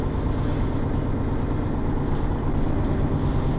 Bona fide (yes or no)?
yes